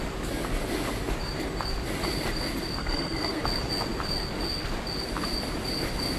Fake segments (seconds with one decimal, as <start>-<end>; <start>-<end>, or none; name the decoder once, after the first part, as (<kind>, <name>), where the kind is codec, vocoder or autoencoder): 2.8-3.4 (codec, SNAC)